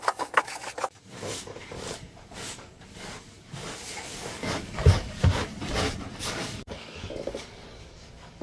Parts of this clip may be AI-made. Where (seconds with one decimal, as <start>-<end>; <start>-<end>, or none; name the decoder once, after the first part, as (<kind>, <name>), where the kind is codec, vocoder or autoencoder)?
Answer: 0.0-5.5 (codec, DAC); 6.2-8.4